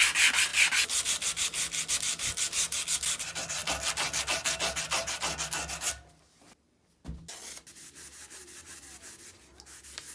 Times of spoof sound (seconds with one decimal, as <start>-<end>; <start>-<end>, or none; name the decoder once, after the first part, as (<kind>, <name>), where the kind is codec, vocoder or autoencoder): none